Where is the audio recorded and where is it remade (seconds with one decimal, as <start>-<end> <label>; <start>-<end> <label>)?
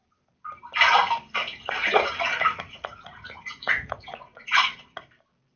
0.0-1.4 recorded; 1.4-4.8 remade; 4.8-5.6 recorded